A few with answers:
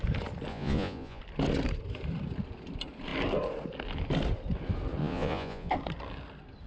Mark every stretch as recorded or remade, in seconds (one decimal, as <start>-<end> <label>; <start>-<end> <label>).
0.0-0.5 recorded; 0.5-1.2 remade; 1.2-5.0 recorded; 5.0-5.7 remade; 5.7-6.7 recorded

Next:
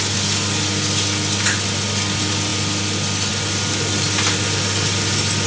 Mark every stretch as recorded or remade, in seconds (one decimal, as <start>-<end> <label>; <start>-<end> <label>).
0.0-5.5 recorded

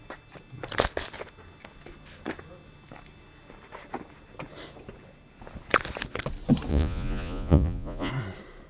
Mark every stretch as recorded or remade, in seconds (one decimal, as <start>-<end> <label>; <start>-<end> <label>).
0.0-6.7 recorded; 6.7-8.1 remade; 8.1-8.7 recorded